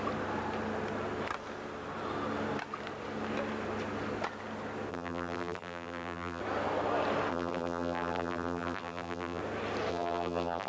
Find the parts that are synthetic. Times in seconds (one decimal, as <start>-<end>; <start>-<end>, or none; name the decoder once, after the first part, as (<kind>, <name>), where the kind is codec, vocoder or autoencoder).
4.9-6.4 (vocoder, BigVGAN v2); 7.3-9.4; 9.9-10.7